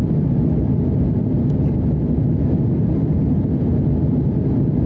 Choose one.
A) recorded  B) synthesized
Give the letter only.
A